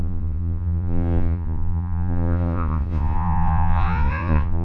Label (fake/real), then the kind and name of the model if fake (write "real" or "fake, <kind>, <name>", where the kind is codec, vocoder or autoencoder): fake, vocoder, Vocos